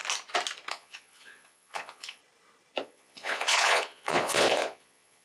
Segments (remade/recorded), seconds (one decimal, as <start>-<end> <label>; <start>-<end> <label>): 0.0-0.7 recorded; 0.7-2.2 remade; 2.2-2.8 recorded; 2.8-5.2 remade